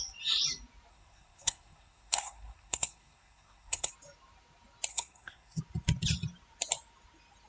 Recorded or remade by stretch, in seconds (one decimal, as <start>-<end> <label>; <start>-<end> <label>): 0.0-0.9 recorded; 0.9-3.9 remade; 3.9-4.9 recorded; 4.9-5.6 remade; 5.6-7.5 recorded